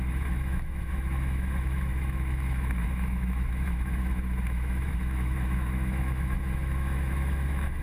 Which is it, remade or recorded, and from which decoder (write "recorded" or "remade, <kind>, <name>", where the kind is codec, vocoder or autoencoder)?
remade, autoencoder, DAC-VAE